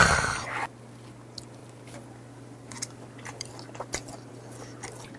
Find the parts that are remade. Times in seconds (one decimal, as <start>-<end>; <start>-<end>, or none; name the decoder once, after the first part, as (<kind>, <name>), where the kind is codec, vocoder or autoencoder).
none